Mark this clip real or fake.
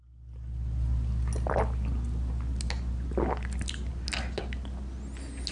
real